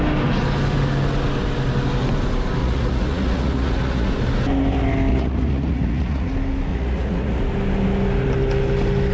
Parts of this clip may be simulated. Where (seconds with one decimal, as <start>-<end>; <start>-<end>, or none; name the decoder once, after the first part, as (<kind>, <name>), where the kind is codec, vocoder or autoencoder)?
2.6-4.1 (vocoder, Vocos); 5.1-6.3; 6.7-7.4